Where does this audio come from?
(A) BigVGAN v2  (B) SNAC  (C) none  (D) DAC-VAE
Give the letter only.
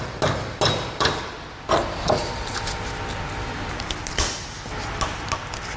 C